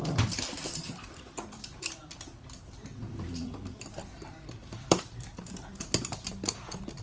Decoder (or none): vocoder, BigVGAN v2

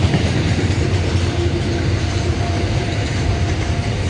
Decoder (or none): vocoder, BigVGAN v2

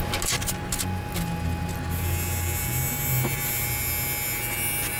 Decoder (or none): none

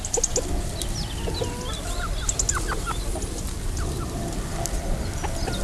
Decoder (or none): none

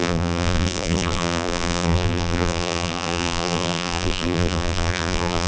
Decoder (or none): vocoder, BigVGAN v2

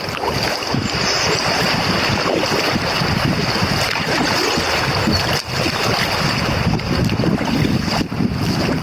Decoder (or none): none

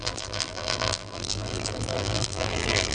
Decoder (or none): vocoder, BigVGAN v2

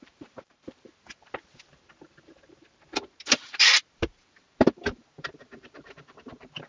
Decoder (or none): vocoder, BigVGAN v2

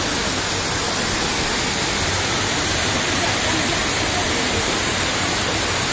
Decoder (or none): none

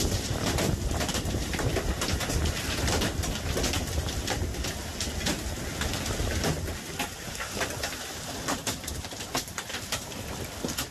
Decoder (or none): none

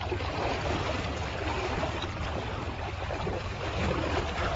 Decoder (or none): vocoder, BigVGAN v2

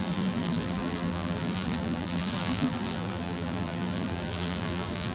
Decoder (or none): vocoder, BigVGAN v2